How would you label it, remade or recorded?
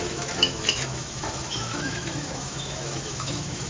remade